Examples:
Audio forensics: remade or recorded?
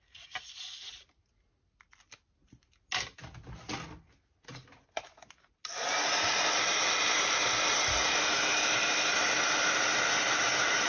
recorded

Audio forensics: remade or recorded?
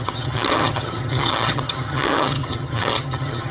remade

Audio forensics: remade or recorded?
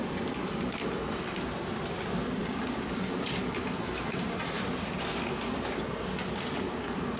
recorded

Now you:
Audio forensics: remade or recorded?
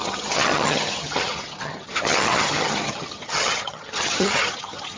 remade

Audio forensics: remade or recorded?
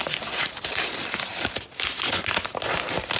recorded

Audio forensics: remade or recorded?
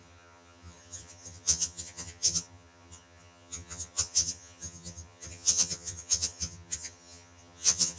remade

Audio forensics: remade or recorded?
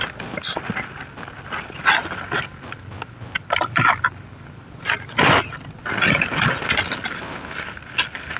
recorded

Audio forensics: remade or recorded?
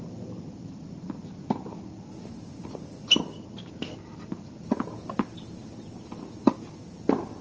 recorded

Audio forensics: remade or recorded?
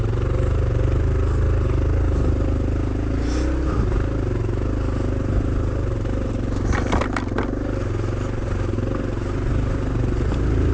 recorded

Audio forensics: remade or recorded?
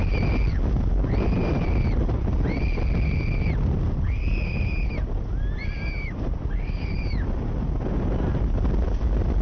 recorded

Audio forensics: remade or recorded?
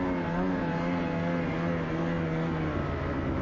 recorded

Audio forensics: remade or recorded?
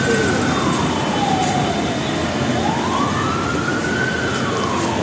recorded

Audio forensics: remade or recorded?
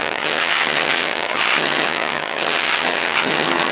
remade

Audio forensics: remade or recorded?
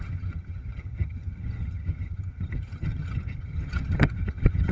remade